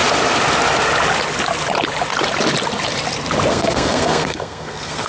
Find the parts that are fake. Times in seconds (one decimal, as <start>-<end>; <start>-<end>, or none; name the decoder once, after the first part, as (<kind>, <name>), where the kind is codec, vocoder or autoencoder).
3.5-5.1 (codec, SNAC)